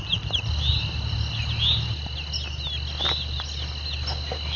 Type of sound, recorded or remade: recorded